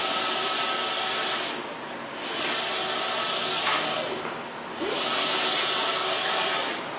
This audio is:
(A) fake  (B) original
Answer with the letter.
B